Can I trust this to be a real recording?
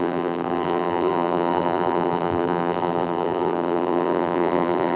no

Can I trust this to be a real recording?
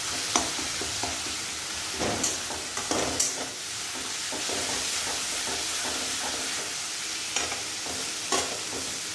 yes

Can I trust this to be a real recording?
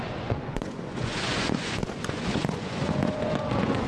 no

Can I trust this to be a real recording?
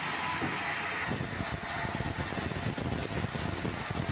yes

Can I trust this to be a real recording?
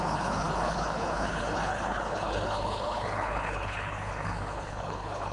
no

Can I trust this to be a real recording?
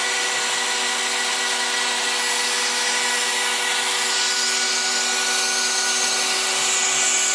yes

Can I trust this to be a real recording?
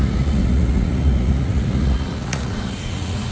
no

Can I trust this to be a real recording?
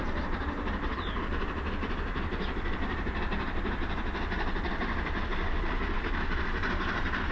yes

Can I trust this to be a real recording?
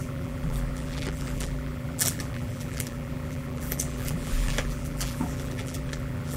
no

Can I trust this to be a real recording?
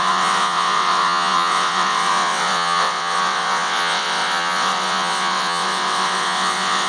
no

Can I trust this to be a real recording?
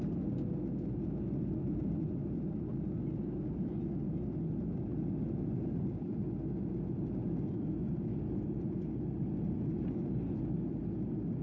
yes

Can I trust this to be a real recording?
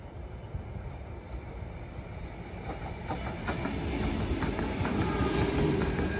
yes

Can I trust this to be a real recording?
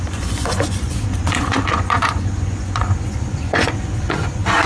no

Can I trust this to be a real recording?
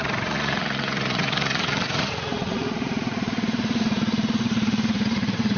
no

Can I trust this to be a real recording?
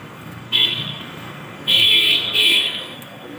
no